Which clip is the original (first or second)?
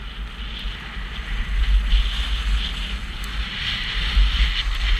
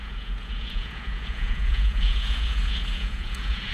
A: first